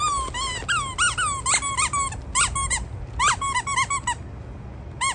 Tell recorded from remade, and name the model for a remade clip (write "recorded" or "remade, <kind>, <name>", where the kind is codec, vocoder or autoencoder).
recorded